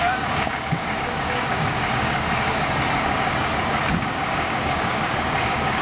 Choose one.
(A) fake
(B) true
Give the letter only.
A